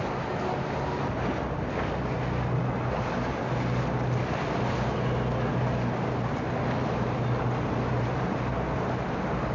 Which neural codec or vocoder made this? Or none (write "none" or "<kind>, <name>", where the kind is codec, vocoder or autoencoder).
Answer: none